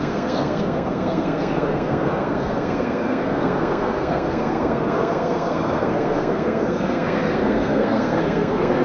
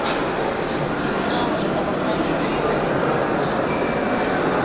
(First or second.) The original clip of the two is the second